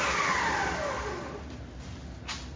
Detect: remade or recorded recorded